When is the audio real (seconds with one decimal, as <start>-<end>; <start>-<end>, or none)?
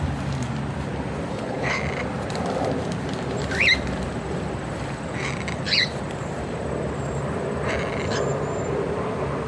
0.0-1.3; 1.8-9.5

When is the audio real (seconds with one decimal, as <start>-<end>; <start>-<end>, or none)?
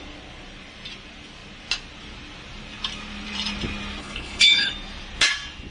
0.0-4.0; 4.7-5.7